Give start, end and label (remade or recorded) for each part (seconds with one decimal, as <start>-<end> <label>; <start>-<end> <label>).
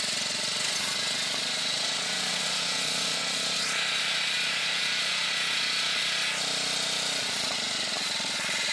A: 0.0-6.2 remade; 6.2-7.2 recorded; 7.2-8.7 remade